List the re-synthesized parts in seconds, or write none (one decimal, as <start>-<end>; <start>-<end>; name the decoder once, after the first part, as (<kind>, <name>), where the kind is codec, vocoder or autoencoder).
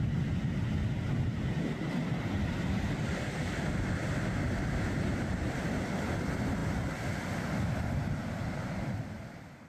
8.2-8.9 (vocoder, BigVGAN v2)